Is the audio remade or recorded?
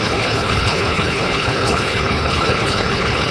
remade